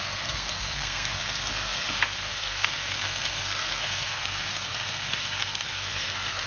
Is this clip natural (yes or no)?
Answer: no